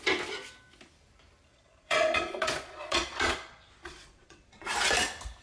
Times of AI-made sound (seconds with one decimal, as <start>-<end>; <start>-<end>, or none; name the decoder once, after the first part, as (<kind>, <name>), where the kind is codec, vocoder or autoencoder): 1.5-4.7 (vocoder, Vocos)